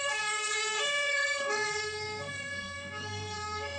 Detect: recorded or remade remade